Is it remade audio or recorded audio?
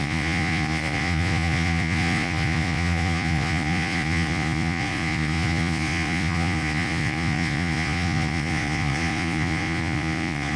remade